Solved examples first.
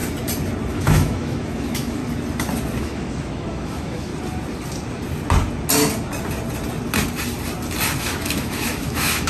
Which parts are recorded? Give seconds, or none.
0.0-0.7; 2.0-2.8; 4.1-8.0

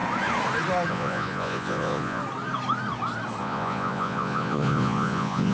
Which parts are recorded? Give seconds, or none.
0.0-0.9; 2.2-3.4

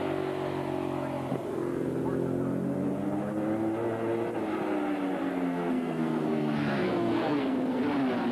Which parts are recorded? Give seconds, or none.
0.0-5.2; 7.8-8.3

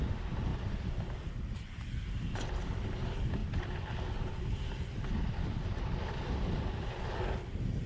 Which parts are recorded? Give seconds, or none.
0.0-0.5; 1.3-3.4; 5.8-7.9

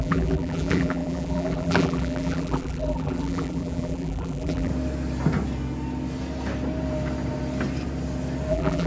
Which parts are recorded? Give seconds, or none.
4.7-8.5

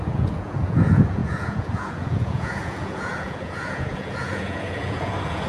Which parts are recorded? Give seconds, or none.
none

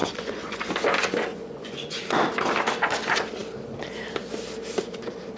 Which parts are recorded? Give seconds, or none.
0.7-1.3; 2.0-5.4